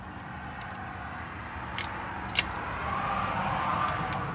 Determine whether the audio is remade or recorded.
recorded